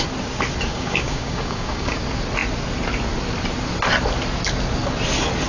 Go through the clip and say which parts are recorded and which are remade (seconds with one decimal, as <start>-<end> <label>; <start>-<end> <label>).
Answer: 0.0-0.7 recorded; 0.7-2.0 remade; 2.0-5.5 recorded